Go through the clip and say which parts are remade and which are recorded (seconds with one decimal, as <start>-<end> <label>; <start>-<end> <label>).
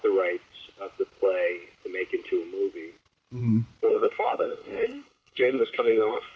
0.0-3.9 recorded; 3.9-6.4 remade